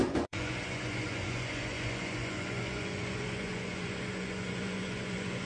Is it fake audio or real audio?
fake